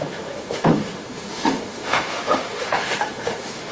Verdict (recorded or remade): remade